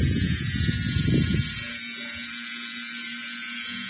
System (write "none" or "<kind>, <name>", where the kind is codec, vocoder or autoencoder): none